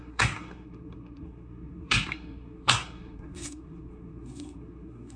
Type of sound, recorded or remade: remade